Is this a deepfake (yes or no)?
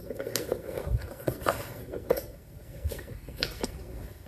yes